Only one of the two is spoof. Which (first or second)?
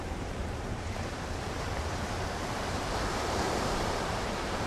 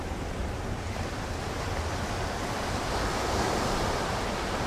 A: first